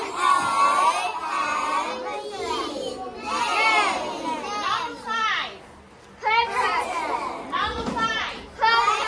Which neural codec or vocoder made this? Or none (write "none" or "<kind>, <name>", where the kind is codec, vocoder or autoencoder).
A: none